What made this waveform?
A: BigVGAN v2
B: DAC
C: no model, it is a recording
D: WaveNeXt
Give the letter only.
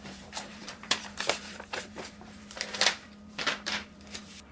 A